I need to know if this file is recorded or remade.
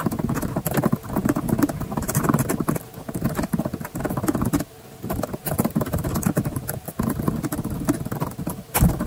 recorded